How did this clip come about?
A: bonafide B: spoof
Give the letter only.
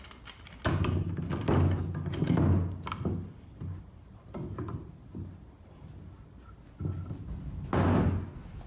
A